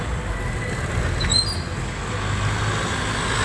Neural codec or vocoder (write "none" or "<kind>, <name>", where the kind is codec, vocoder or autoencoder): none